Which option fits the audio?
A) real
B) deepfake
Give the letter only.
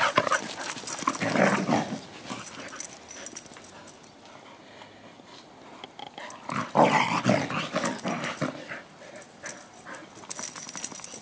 A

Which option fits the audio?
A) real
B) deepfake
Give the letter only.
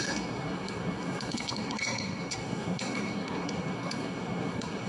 B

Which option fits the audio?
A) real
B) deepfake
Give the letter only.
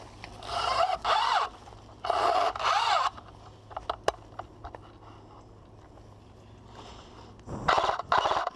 A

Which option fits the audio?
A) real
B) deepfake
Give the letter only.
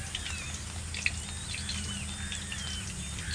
A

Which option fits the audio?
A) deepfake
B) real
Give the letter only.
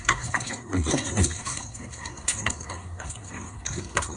A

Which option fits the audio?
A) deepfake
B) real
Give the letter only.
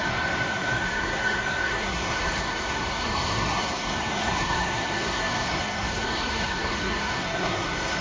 A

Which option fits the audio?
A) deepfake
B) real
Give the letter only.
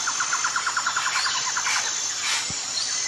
B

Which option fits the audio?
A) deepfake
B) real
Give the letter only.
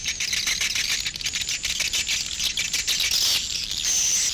B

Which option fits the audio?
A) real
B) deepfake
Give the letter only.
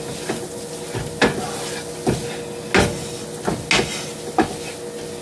A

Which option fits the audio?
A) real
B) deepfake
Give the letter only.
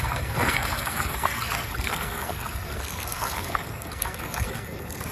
B